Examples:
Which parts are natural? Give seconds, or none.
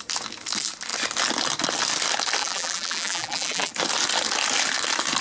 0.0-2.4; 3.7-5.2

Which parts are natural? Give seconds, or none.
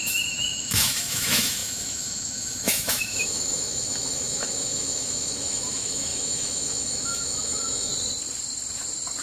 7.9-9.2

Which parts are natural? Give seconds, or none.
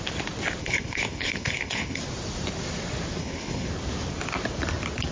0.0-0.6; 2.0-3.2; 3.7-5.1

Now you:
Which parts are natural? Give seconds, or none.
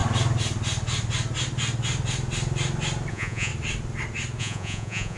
0.0-3.1; 3.5-4.4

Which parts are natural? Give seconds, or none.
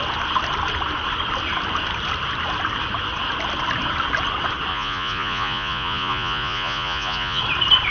0.0-4.7; 7.4-7.9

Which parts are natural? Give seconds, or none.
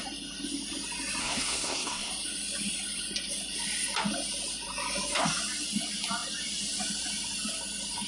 0.0-1.2; 2.1-8.1